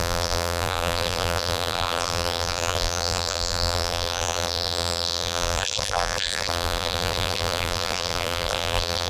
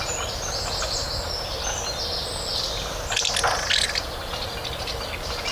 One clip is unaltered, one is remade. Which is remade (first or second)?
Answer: first